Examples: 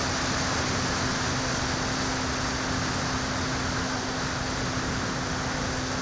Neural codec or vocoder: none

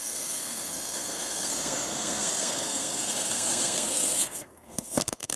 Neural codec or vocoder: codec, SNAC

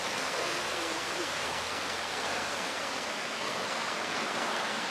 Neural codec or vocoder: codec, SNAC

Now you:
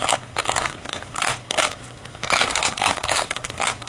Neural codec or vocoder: codec, SNAC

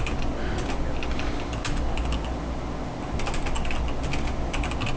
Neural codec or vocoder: none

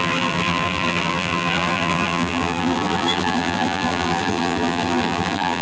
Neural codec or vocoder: vocoder, BigVGAN v2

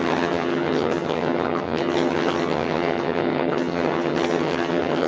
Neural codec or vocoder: vocoder, HiFi-GAN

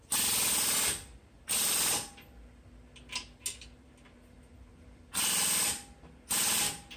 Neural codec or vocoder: none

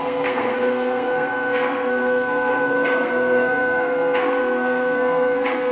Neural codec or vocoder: codec, SNAC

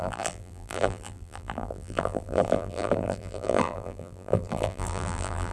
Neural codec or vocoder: vocoder, BigVGAN v2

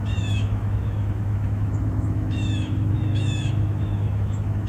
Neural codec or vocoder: autoencoder, DAC-VAE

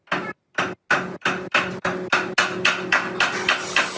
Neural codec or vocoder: none